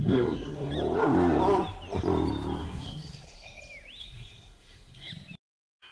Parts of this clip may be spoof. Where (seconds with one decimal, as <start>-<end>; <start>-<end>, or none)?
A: 0.0-0.7; 2.6-3.6; 4.0-5.1

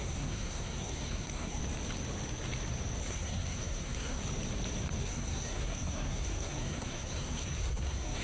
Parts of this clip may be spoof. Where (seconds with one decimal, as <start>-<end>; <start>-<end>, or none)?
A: 0.0-1.6; 3.1-4.2; 5.0-8.2